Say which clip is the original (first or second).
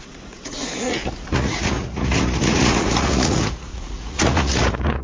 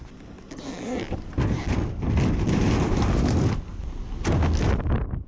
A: second